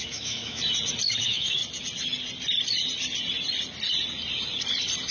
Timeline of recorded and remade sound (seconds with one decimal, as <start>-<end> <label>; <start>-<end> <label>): 0.0-0.6 remade; 0.6-1.2 recorded; 1.2-1.6 remade; 1.6-5.1 recorded